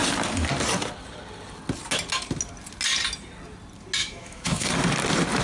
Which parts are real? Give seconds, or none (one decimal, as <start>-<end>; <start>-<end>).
0.0-4.0; 4.7-5.4